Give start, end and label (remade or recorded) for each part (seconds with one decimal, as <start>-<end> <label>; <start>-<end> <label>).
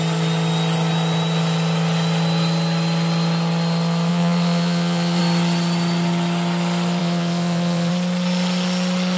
0.0-4.1 recorded; 4.1-5.2 remade; 5.2-7.0 recorded; 7.0-7.9 remade; 7.9-9.2 recorded